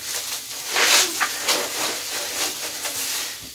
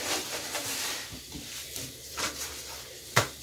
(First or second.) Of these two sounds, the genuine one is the first